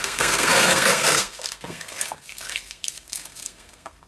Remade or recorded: remade